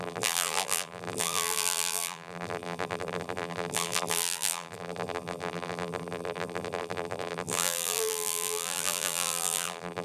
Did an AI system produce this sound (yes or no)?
yes